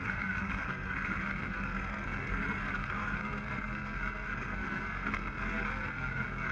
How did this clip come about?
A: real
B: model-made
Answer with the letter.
B